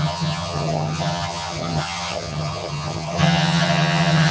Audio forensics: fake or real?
fake